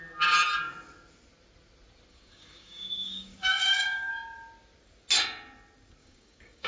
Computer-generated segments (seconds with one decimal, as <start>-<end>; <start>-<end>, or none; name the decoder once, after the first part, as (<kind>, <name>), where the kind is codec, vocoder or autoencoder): 2.1-4.1 (codec, DAC); 6.0-6.7